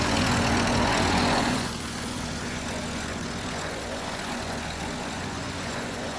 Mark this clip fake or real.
fake